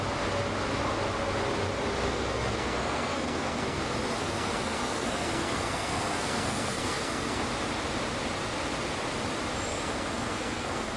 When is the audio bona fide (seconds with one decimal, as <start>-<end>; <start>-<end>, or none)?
0.0-2.1; 3.8-4.2; 7.4-9.7